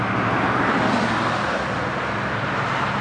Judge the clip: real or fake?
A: real